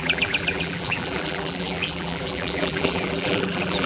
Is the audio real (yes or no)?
no